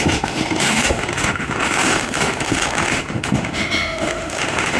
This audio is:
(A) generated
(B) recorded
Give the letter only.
A